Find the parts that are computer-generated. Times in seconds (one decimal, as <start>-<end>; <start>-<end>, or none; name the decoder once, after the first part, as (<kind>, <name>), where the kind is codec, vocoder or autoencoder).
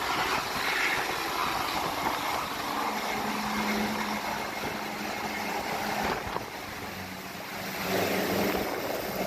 none